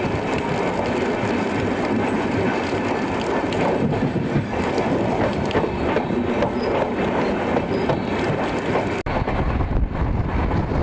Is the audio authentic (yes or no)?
yes